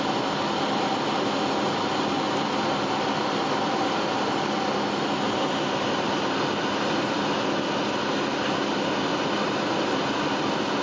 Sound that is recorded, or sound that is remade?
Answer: recorded